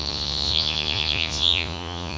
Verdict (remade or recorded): remade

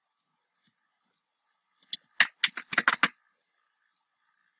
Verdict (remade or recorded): recorded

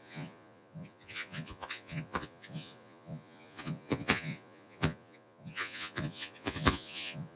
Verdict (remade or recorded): remade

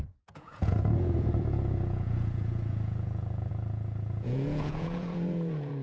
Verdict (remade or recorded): remade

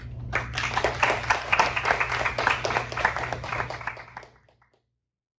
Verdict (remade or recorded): recorded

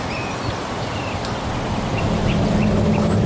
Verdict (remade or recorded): recorded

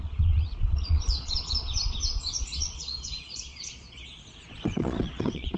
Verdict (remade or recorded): remade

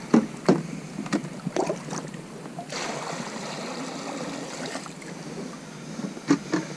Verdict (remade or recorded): recorded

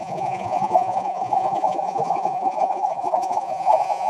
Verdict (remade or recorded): remade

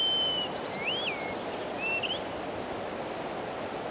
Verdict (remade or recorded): recorded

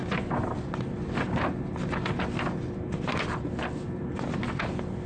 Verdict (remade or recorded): recorded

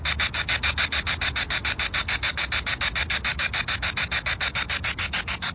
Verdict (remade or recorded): recorded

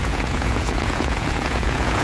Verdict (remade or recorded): remade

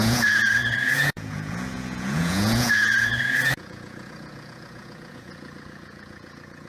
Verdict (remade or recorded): remade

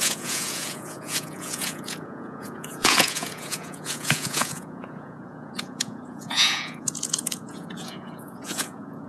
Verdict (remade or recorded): remade